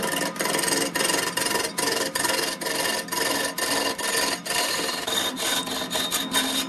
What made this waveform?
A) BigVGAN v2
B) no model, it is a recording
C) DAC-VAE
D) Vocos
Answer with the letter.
B